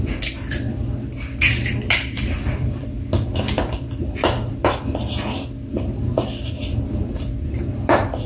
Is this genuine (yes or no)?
no